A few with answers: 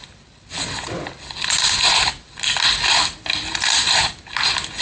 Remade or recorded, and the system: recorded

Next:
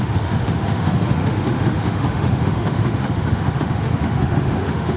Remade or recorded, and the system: remade, autoencoder, DAC-VAE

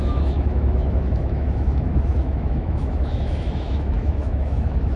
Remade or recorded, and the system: remade, autoencoder, DAC-VAE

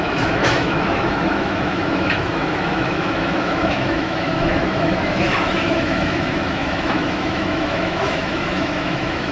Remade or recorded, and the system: remade, autoencoder, DAC-VAE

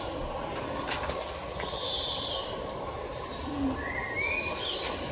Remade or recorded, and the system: recorded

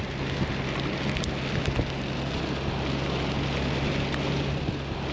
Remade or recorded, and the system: recorded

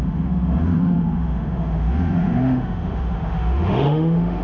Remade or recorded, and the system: remade, autoencoder, DAC-VAE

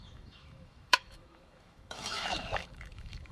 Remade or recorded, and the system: remade, autoencoder, DAC-VAE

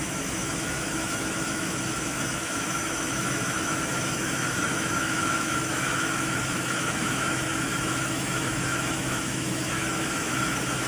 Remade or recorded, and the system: remade, autoencoder, DAC-VAE